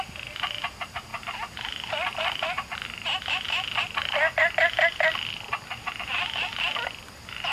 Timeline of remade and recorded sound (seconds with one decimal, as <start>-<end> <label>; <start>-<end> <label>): 0.0-7.5 recorded